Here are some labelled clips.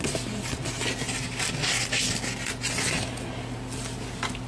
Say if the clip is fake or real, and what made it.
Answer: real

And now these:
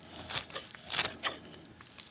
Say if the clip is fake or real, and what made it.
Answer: real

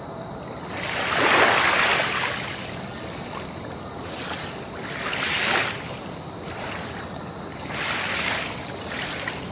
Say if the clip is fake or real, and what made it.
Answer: real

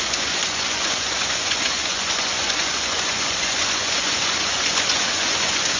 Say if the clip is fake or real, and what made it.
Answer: fake, vocoder, Vocos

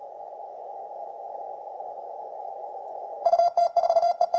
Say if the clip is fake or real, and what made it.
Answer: fake, vocoder, Vocos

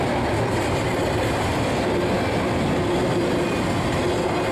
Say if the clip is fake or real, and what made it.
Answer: real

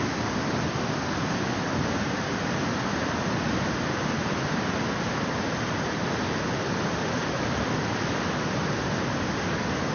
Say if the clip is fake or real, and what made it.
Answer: real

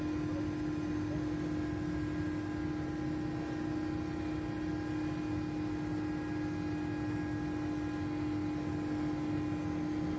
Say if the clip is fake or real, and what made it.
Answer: real